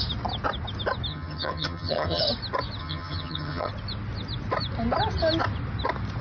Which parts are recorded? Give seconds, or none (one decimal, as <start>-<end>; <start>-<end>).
0.0-1.1; 2.2-2.8; 3.7-6.2